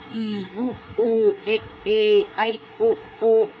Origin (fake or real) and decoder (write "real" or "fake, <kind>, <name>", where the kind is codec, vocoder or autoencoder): fake, codec, SNAC